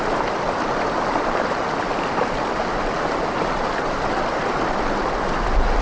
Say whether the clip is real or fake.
real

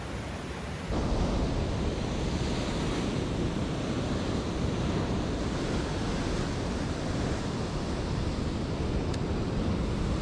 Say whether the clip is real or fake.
real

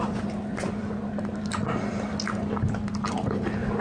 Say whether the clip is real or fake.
real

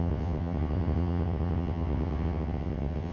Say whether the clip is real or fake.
fake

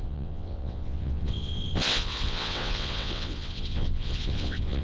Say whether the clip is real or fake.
fake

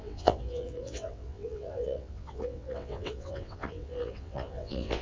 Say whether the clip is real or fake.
fake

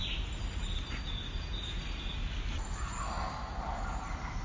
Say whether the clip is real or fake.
real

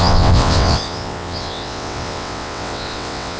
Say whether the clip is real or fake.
fake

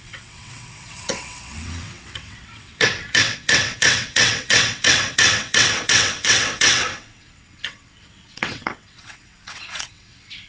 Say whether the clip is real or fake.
fake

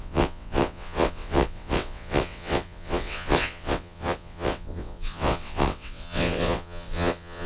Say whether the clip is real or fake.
fake